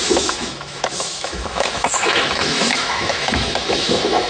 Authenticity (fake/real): fake